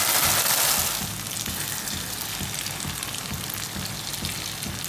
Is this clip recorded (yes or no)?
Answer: yes